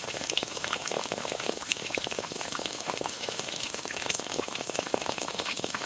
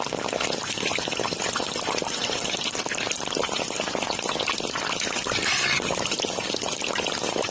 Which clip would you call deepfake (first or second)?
first